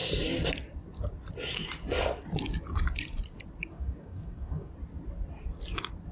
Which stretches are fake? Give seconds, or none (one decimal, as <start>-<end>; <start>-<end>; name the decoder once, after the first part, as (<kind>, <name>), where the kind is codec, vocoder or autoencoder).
3.7-4.7 (codec, DAC)